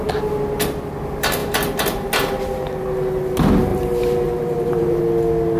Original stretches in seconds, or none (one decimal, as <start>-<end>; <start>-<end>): 0.0-3.7; 5.0-5.6